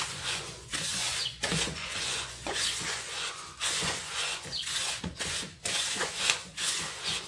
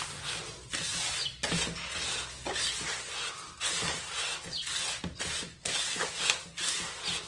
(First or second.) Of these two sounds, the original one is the second